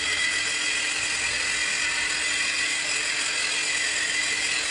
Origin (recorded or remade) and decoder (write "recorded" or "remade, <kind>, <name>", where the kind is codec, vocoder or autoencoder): recorded